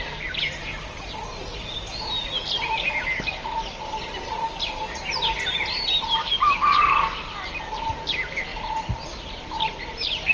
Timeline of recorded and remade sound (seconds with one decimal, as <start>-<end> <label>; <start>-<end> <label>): 0.0-6.2 recorded; 6.2-7.2 remade; 7.2-10.3 recorded